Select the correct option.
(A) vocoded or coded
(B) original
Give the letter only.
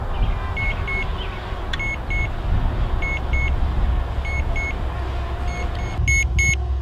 B